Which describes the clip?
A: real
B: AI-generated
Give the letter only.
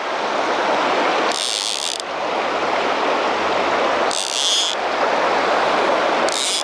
A